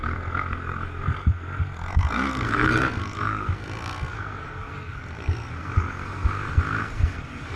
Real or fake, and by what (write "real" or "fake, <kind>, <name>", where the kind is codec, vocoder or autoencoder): fake, codec, SNAC